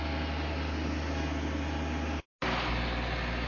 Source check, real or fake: real